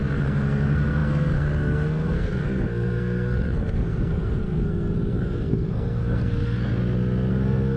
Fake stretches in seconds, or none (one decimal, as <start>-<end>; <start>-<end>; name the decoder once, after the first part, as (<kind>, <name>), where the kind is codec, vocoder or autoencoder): 0.0-6.7 (codec, SNAC); 7.3-7.8